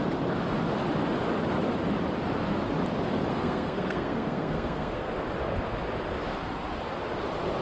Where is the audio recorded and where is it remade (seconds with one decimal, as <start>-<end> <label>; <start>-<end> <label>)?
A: 0.0-3.3 recorded; 3.3-5.1 remade; 5.1-7.6 recorded